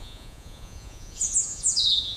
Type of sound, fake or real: fake